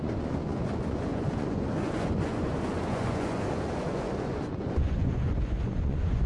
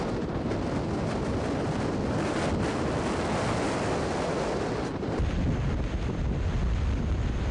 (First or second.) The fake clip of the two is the first